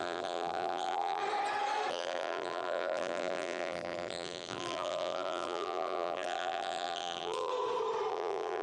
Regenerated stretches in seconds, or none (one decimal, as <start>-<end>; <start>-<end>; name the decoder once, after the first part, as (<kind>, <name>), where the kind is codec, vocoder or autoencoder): 0.0-1.2 (vocoder, BigVGAN v2); 1.9-7.5; 8.1-8.6